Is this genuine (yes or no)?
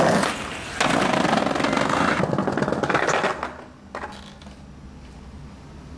yes